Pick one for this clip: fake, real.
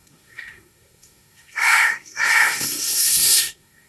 fake